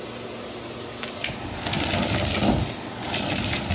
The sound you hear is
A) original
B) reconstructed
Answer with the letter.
A